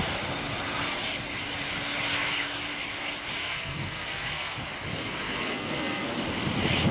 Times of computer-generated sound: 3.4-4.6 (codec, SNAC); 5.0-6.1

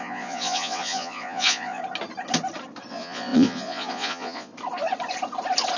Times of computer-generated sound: 0.0-1.8 (vocoder, Vocos); 2.9-4.5

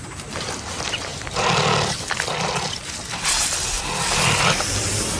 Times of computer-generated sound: none

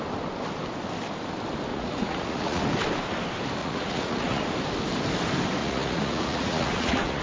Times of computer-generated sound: 1.7-2.6 (vocoder, Vocos); 3.6-4.4; 5.6-7.2

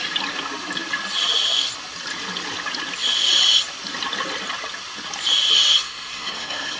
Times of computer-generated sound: 5.8-6.8 (codec, SNAC)